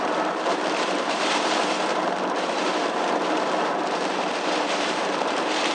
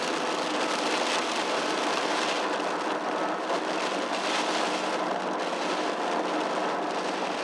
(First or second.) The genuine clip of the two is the second